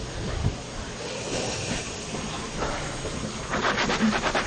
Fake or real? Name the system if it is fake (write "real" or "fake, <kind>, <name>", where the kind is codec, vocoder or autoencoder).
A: fake, vocoder, BigVGAN v2